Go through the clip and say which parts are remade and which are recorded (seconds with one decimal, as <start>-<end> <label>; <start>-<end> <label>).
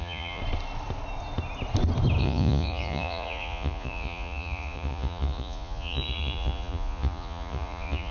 0.0-0.4 remade; 0.4-2.2 recorded; 2.2-8.1 remade